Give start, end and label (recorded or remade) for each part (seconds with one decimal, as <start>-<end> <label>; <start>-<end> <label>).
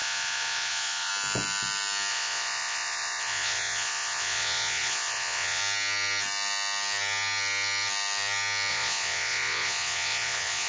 0.0-1.1 remade; 1.1-2.1 recorded; 2.1-5.6 remade; 5.6-8.7 recorded; 8.7-10.7 remade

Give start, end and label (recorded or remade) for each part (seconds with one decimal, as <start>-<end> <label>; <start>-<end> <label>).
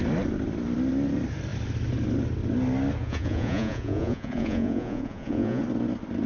0.0-3.0 recorded; 3.0-5.6 remade; 5.6-6.3 recorded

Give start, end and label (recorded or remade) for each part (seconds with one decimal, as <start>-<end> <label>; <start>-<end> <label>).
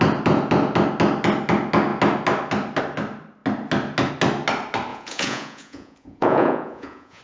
0.0-4.9 recorded; 4.9-7.2 remade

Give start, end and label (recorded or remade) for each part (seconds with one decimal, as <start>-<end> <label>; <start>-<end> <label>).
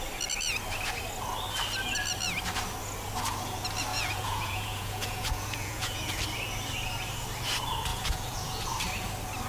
0.0-3.9 recorded; 3.9-6.2 remade; 6.2-7.9 recorded; 7.9-8.7 remade; 8.7-9.5 recorded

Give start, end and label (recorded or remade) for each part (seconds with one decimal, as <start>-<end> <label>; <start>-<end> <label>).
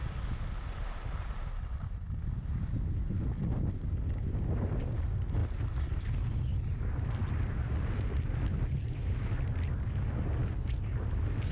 0.0-11.5 recorded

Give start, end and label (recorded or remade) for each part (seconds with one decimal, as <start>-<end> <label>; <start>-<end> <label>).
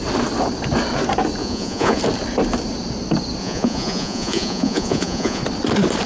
0.0-1.4 recorded; 1.4-2.0 remade; 2.0-3.4 recorded; 3.4-5.4 remade; 5.4-6.1 recorded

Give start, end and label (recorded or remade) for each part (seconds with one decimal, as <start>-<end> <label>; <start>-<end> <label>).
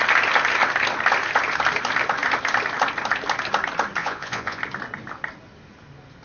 0.0-4.0 recorded; 4.0-4.6 remade; 4.6-6.2 recorded